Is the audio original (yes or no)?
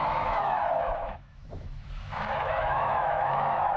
no